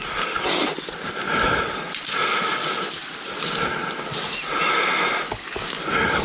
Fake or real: real